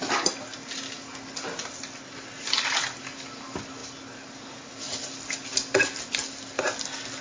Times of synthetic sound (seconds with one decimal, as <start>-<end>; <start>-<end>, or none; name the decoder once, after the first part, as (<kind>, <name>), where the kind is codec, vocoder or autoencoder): none